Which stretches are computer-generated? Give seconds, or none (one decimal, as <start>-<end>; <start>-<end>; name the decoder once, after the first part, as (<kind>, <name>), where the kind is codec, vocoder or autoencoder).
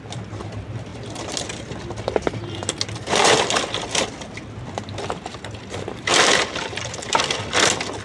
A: 6.1-7.2 (vocoder, BigVGAN v2)